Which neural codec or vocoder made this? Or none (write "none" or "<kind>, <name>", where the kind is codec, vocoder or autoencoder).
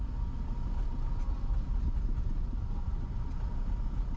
none